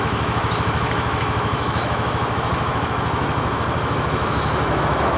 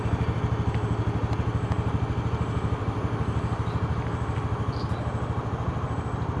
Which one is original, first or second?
second